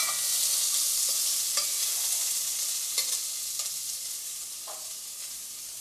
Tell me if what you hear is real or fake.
real